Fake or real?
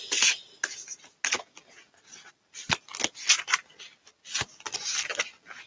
real